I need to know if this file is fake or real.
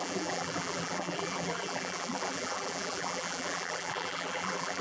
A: fake